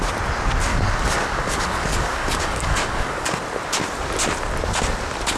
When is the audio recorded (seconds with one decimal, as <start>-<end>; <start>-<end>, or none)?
0.0-0.7; 3.4-5.4